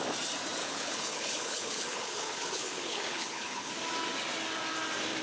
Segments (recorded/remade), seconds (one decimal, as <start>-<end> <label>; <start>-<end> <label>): 0.0-0.6 recorded; 0.6-3.7 remade; 3.7-5.2 recorded